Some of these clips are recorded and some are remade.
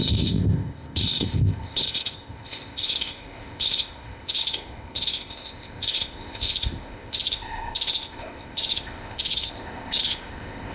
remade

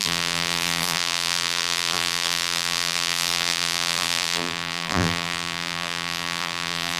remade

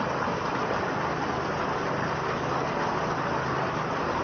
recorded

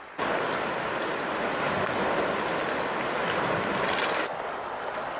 recorded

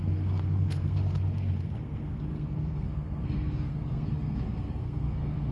remade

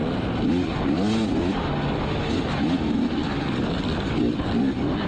recorded